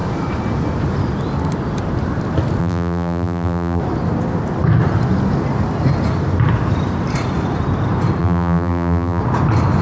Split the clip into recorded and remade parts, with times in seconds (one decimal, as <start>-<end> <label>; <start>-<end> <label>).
0.0-2.6 recorded; 2.6-3.8 remade; 3.8-8.2 recorded; 8.2-9.2 remade; 9.2-9.8 recorded